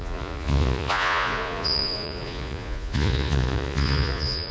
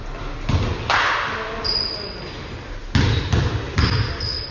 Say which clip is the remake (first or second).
first